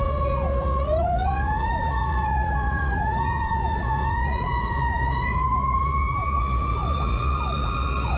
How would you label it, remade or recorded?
remade